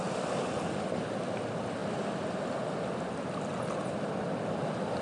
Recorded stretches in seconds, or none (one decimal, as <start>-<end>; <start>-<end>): 0.0-5.0